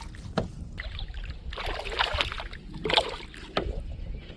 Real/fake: real